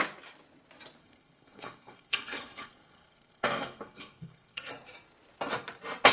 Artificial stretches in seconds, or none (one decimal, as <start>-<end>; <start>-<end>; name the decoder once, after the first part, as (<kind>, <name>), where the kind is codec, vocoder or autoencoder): 1.0-4.7 (codec, SNAC)

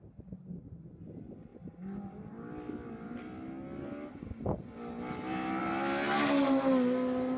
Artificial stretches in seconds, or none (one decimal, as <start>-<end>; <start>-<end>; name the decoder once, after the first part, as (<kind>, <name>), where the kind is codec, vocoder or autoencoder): none